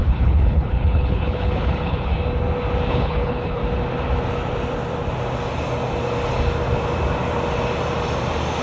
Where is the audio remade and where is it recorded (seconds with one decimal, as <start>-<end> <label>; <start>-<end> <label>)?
0.0-2.1 remade; 2.1-2.9 recorded; 2.9-3.6 remade; 3.6-8.6 recorded